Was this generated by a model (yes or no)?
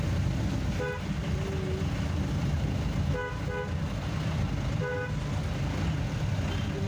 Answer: no